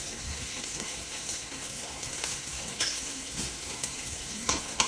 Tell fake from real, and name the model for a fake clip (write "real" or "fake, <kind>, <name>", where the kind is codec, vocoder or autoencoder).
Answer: fake, codec, SNAC